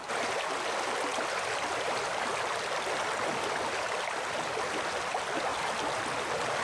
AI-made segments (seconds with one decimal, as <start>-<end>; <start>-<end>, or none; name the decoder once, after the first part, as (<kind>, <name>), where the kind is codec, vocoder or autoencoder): 0.0-0.5 (vocoder, BigVGAN v2); 1.1-3.5; 5.5-6.0